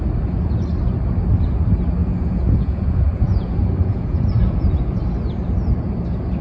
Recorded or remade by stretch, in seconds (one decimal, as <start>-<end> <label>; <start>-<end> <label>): 0.0-2.0 recorded; 2.0-5.0 remade; 5.0-6.4 recorded